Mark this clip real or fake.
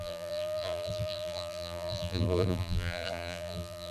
fake